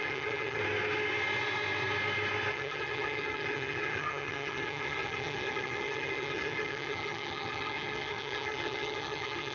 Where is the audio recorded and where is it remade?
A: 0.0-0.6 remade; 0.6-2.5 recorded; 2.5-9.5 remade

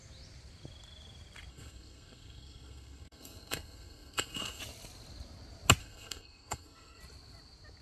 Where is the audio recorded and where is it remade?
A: 0.0-1.5 recorded; 1.5-4.6 remade; 4.6-5.8 recorded; 5.8-7.0 remade; 7.0-7.8 recorded